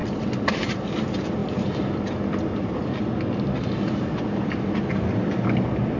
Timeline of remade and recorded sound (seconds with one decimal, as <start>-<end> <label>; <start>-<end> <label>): 0.0-6.0 recorded